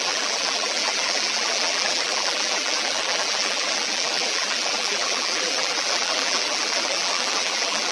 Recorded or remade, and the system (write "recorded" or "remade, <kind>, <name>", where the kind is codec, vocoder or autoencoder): remade, vocoder, BigVGAN v2